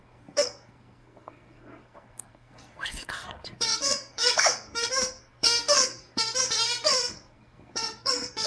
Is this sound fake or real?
fake